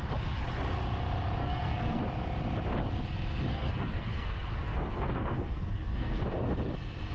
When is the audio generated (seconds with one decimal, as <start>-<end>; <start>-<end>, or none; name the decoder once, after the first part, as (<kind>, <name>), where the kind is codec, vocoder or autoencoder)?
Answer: 1.4-2.0 (codec, SNAC); 3.5-6.3